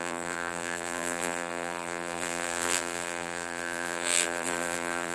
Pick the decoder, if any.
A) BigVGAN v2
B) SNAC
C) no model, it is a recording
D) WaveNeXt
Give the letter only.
A